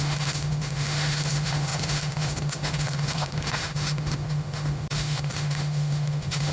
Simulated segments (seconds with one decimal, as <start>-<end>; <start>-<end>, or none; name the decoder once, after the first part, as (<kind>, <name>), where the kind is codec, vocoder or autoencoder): 0.0-6.5 (autoencoder, DAC-VAE)